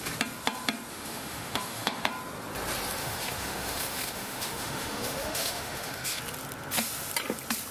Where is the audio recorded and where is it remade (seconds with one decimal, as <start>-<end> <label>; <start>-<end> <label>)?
0.0-0.9 recorded; 0.9-2.1 remade; 2.1-3.0 recorded; 3.0-6.2 remade; 6.2-7.7 recorded